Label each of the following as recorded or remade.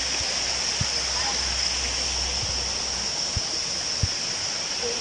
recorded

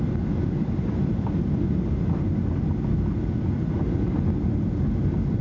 recorded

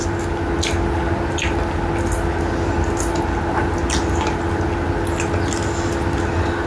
recorded